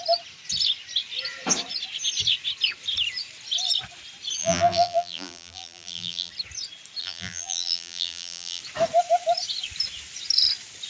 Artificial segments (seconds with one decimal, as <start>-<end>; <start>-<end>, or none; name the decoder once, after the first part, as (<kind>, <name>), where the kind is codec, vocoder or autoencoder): 4.4-6.3 (vocoder, BigVGAN v2); 7.0-8.6